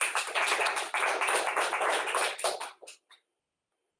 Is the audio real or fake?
real